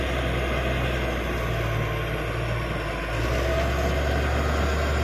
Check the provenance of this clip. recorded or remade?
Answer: recorded